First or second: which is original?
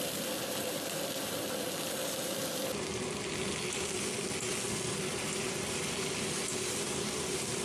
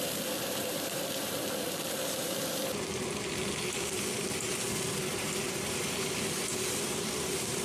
first